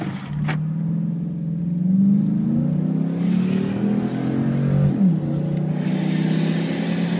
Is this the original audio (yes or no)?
yes